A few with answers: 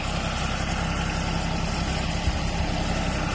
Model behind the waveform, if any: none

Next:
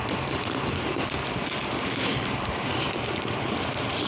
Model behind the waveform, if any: vocoder, BigVGAN v2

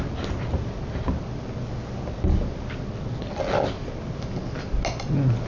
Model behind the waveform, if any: none